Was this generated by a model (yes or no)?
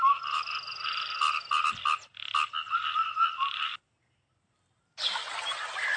no